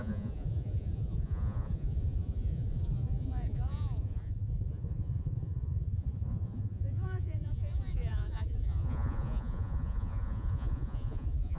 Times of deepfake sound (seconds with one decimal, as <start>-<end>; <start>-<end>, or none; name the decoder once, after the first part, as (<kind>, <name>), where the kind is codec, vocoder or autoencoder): 0.0-11.6 (vocoder, Vocos)